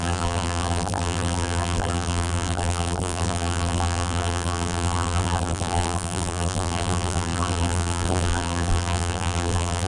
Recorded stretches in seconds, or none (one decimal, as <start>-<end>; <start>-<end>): none